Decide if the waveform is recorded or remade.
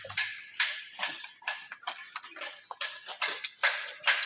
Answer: recorded